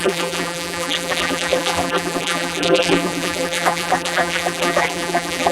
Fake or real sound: fake